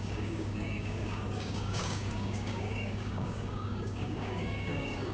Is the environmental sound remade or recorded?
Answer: remade